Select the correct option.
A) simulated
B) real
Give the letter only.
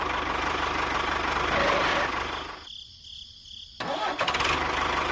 B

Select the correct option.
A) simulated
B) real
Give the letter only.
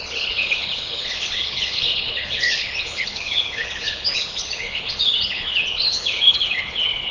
A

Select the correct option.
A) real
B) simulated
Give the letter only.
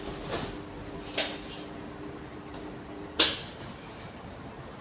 A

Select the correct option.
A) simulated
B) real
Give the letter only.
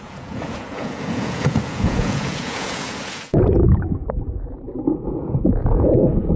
A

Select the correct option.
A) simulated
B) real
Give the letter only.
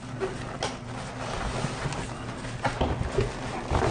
B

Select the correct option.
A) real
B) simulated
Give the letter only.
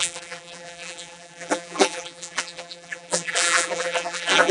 B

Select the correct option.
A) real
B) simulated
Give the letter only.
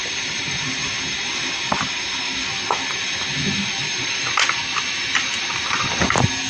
A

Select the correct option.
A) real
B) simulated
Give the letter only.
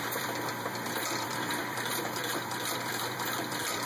B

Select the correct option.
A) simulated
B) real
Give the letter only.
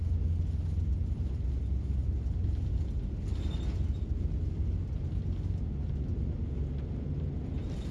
B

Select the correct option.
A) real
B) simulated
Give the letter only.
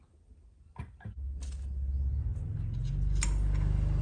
A